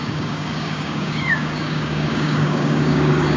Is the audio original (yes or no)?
no